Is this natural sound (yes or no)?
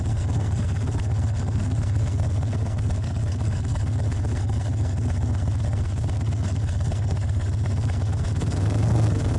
no